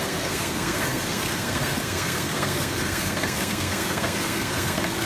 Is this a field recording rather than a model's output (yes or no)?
no